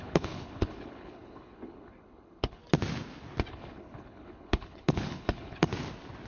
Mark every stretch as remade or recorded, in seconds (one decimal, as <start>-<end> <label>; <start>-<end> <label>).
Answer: 0.0-2.6 remade; 2.6-3.5 recorded; 3.5-5.7 remade; 5.7-6.3 recorded